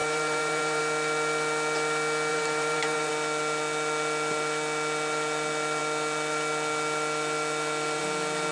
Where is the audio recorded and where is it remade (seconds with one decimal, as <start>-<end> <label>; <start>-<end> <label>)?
0.0-0.8 remade; 0.8-2.3 recorded; 2.3-3.1 remade; 3.1-8.5 recorded